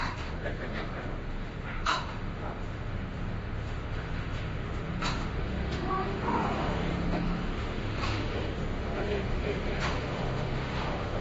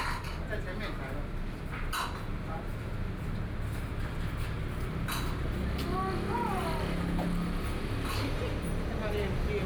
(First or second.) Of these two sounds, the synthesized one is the first